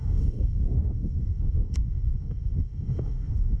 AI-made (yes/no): yes